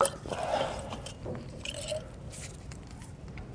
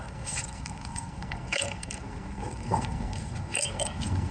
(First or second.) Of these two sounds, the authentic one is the first